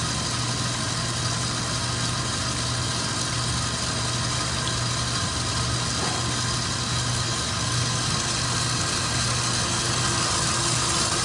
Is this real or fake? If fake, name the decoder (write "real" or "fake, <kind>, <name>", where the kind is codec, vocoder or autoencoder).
real